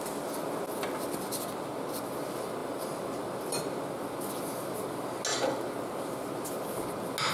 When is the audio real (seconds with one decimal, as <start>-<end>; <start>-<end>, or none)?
0.0-2.6; 3.6-7.3